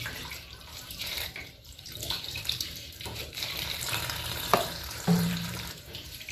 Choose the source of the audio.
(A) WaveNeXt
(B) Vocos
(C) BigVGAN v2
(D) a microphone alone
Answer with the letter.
C